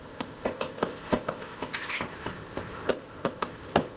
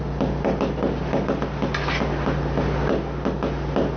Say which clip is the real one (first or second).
second